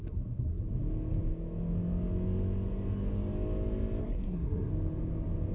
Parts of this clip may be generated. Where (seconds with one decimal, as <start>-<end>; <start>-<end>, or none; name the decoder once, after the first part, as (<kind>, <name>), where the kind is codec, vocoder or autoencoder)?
0.0-0.6 (codec, SNAC); 4.0-4.7